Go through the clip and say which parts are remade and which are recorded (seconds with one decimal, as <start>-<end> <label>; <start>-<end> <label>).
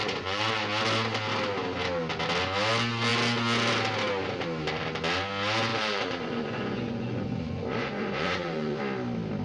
0.0-0.6 remade; 0.6-5.7 recorded; 5.7-8.8 remade; 8.8-9.4 recorded